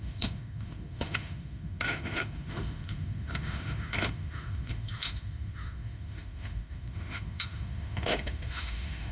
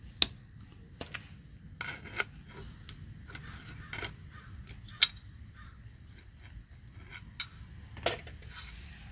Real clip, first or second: second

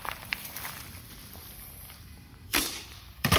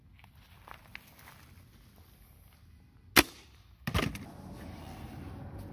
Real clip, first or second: second